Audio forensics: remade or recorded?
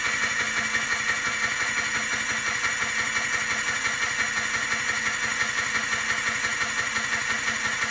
recorded